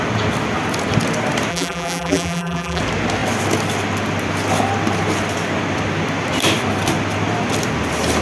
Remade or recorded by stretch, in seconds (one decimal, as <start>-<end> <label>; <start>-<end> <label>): 0.0-1.5 recorded; 1.5-2.8 remade; 2.8-8.2 recorded